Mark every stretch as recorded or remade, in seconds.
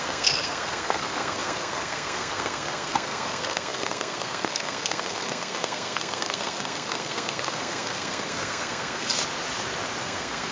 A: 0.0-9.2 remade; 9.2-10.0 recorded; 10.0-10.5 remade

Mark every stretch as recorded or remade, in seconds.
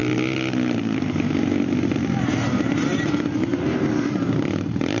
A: 0.0-3.0 remade; 3.0-3.5 recorded; 3.5-5.0 remade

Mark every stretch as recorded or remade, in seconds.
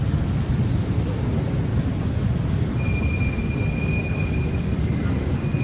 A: 0.0-5.6 recorded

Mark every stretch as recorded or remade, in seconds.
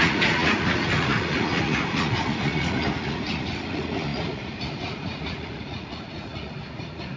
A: 0.0-7.2 remade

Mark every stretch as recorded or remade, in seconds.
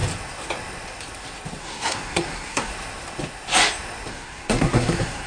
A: 0.0-1.6 recorded; 1.6-2.7 remade; 2.7-4.1 recorded; 4.1-5.3 remade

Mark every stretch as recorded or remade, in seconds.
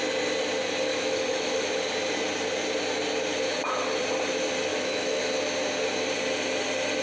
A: 0.0-0.9 recorded; 0.9-1.8 remade; 1.8-4.7 recorded; 4.7-5.2 remade; 5.2-7.0 recorded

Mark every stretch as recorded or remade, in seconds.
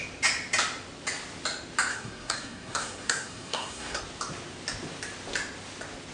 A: 0.0-1.9 recorded; 1.9-4.0 remade; 4.0-6.1 recorded